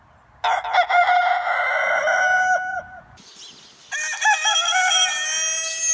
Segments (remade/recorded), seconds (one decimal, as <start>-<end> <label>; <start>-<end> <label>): 0.0-2.7 recorded; 2.7-3.3 remade; 3.3-5.9 recorded